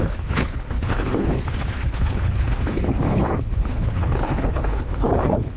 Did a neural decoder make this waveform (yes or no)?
yes